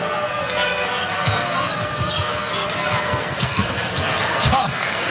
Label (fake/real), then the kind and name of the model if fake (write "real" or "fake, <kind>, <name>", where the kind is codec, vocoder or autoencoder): fake, codec, SNAC